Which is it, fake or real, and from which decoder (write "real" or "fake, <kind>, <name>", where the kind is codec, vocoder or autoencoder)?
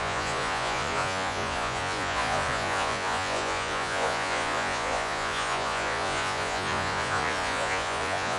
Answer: fake, vocoder, Vocos